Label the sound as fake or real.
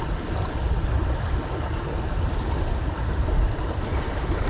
real